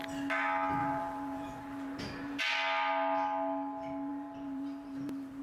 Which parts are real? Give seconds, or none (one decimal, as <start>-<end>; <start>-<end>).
0.0-0.8; 2.4-4.1